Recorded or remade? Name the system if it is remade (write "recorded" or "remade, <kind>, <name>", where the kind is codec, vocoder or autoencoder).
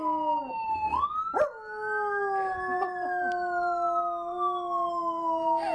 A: recorded